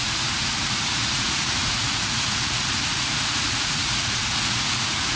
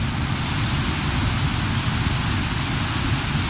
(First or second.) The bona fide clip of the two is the second